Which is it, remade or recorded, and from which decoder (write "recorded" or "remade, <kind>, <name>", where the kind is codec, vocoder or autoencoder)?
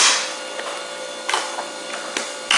recorded